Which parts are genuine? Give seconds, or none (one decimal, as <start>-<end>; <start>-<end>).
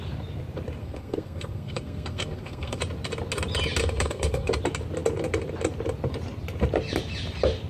0.0-0.8; 2.8-3.8; 4.5-7.7